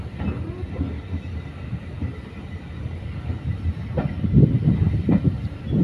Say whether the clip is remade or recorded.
recorded